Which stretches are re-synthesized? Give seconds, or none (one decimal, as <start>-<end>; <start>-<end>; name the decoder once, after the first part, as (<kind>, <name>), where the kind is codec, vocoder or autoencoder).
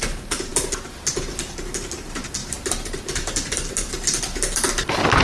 2.4-3.9 (vocoder, BigVGAN v2)